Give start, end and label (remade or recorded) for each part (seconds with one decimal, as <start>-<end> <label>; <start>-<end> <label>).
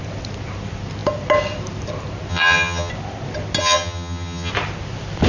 0.0-2.3 recorded; 2.3-2.9 remade; 2.9-3.6 recorded; 3.6-4.5 remade; 4.5-5.3 recorded